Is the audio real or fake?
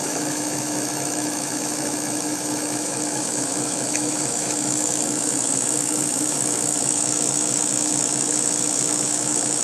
fake